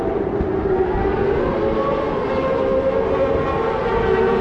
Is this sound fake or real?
real